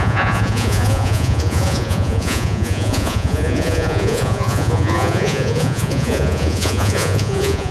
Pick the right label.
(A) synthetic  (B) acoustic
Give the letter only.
A